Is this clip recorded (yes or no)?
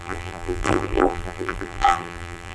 no